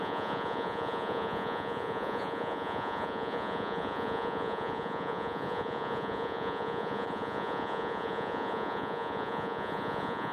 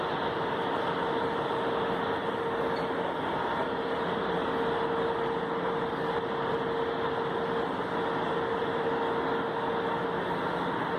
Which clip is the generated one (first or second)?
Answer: first